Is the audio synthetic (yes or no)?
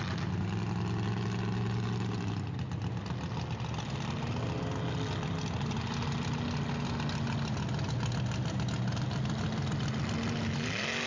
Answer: no